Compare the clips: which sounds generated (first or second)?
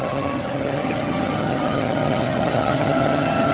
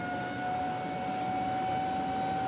first